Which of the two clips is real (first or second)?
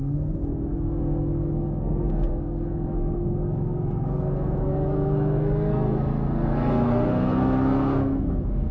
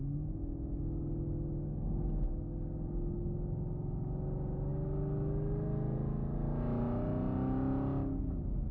second